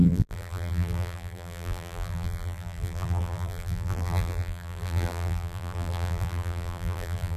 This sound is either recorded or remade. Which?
remade